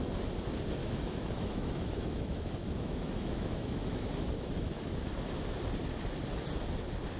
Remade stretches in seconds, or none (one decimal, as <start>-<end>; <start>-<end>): 0.8-5.1